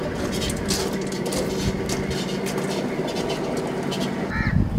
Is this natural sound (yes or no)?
yes